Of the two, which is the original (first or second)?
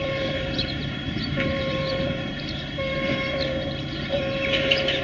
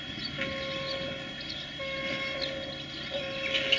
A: second